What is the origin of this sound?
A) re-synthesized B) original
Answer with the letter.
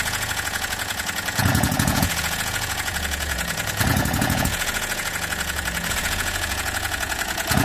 A